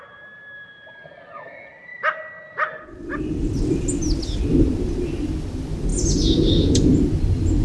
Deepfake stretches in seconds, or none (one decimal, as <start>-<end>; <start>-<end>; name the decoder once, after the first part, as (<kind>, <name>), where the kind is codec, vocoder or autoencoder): none